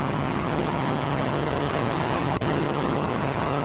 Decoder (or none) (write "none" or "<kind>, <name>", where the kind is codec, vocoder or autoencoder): vocoder, HiFi-GAN